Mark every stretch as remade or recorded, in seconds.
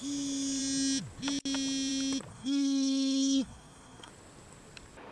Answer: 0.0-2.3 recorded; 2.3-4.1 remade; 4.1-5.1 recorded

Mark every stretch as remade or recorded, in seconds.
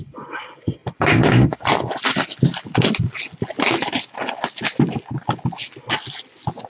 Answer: 0.0-6.7 recorded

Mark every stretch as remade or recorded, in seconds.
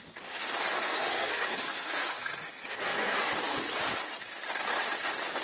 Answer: 0.0-0.7 recorded; 0.7-3.2 remade; 3.2-5.4 recorded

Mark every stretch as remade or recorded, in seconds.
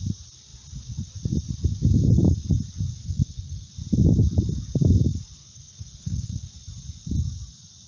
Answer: 0.0-3.0 recorded; 3.0-3.7 remade; 3.7-5.4 recorded; 5.4-6.5 remade; 6.5-7.9 recorded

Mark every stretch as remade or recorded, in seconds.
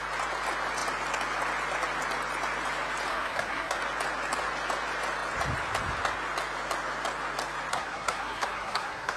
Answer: 0.0-3.1 recorded; 3.1-3.8 remade; 3.8-7.7 recorded; 7.7-9.2 remade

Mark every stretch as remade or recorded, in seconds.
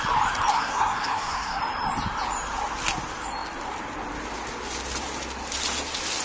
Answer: 0.0-0.5 recorded; 0.5-1.6 remade; 1.6-6.2 recorded